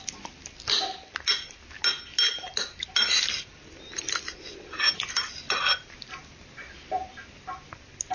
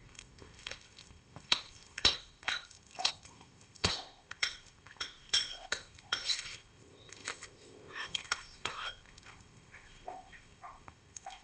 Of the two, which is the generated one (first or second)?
second